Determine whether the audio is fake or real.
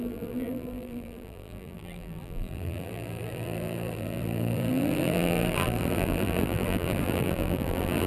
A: fake